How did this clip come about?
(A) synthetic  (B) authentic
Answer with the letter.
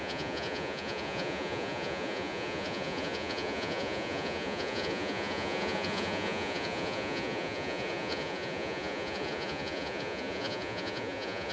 A